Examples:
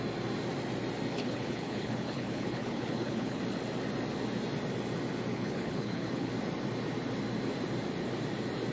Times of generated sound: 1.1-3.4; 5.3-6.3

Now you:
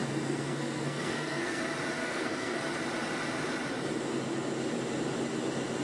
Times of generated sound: 0.0-1.6; 2.0-2.6

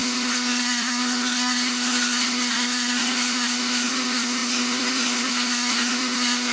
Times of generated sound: 0.0-6.5

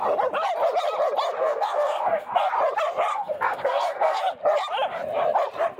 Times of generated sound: 1.4-2.5; 3.1-4.2

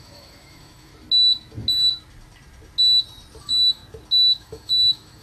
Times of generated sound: 0.0-0.9; 3.4-3.8; 4.4-5.2

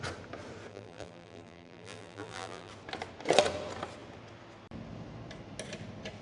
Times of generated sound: 0.7-2.7

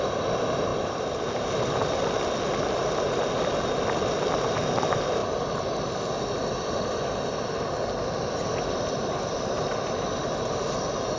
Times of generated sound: 0.7-1.7